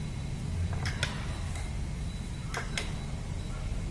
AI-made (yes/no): no